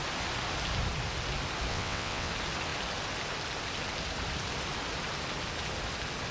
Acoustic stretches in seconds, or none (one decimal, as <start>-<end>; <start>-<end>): 0.0-1.7; 2.3-6.3